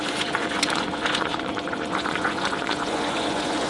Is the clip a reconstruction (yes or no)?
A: yes